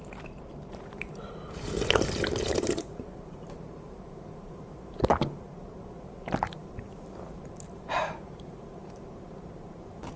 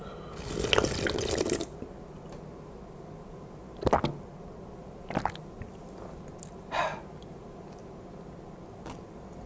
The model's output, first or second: first